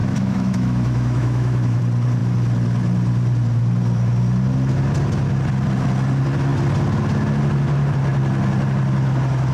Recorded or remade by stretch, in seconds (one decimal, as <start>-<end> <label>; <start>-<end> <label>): 0.0-1.8 remade; 1.8-9.5 recorded